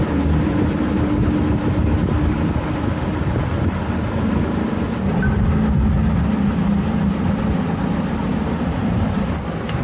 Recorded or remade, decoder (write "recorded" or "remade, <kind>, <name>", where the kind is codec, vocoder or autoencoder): recorded